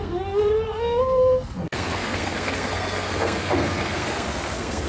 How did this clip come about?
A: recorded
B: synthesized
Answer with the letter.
B